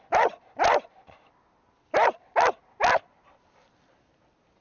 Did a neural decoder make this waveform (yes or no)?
no